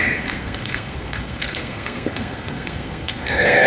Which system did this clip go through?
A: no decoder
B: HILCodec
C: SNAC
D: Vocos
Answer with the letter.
C